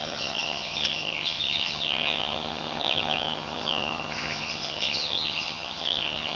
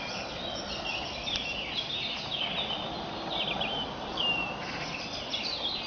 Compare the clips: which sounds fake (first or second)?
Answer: first